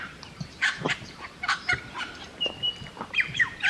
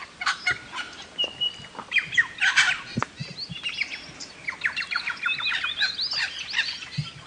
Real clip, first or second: second